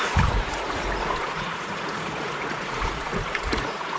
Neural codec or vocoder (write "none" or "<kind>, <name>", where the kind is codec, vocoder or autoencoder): vocoder, Vocos